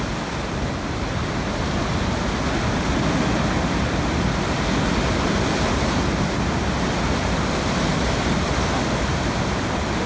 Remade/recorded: recorded